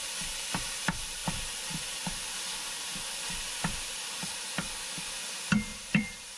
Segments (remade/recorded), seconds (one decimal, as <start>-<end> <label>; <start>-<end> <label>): 0.0-5.7 recorded; 5.7-6.4 remade